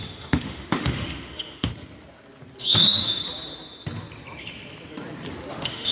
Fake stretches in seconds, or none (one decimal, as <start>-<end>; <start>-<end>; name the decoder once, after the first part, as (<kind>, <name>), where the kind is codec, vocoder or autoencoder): 0.0-1.7 (autoencoder, DAC-VAE); 2.6-3.2; 5.5-5.9